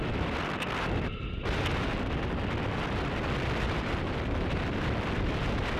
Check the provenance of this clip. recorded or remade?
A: recorded